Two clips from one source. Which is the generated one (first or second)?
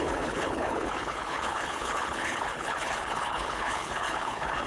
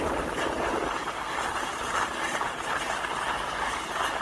first